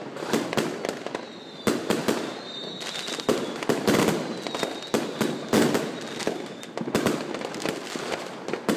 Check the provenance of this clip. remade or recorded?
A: recorded